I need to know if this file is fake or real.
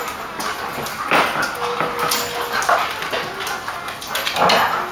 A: real